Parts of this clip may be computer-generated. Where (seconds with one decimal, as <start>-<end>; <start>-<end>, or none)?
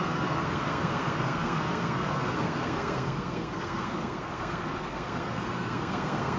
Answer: 0.0-6.4